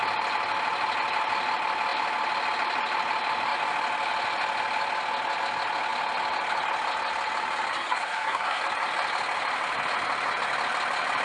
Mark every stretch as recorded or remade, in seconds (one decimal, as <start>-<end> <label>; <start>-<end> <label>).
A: 0.0-7.7 recorded; 7.7-8.6 remade; 8.6-11.2 recorded

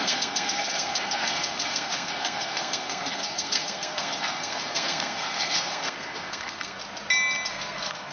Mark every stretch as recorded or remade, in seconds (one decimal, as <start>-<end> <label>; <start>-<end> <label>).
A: 0.0-6.8 remade; 6.8-7.5 recorded; 7.5-8.1 remade

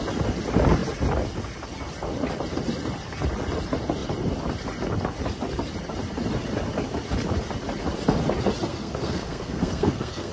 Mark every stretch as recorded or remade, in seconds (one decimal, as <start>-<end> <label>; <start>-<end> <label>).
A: 0.0-8.7 recorded; 8.7-10.3 remade

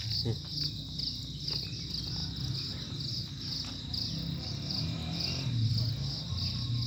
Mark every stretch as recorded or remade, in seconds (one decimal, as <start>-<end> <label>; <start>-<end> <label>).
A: 0.0-6.9 recorded